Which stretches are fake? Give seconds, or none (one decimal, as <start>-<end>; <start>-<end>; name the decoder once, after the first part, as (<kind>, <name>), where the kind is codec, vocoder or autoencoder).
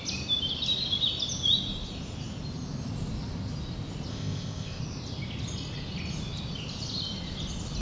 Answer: 4.1-4.8 (codec, ZipCodec)